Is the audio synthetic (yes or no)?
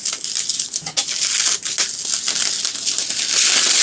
no